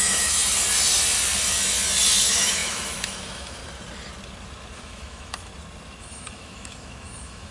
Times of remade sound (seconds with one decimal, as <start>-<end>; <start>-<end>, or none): 0.0-0.4; 2.2-3.6; 4.8-5.5; 6.0-7.5